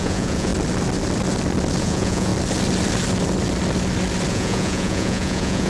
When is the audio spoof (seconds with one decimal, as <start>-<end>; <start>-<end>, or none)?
0.0-0.5; 1.8-2.3; 4.3-5.7